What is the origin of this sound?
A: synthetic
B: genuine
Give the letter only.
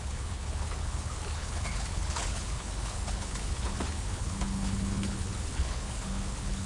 A